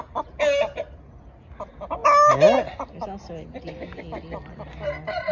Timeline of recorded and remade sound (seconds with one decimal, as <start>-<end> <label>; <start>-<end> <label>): 0.0-5.3 recorded